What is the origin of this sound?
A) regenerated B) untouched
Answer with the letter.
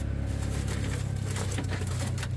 B